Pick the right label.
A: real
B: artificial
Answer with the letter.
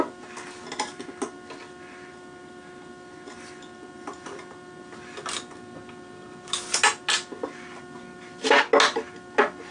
A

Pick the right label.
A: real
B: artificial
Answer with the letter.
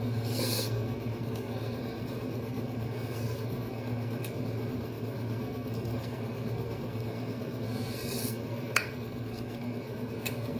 B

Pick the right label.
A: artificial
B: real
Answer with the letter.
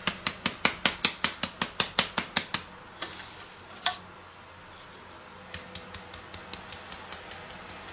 B